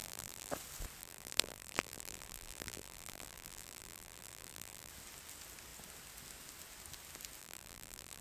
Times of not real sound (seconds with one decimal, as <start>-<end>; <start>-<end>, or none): 0.0-0.5; 1.0-4.9; 7.4-8.2